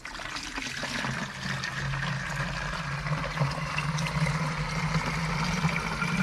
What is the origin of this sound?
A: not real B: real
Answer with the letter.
B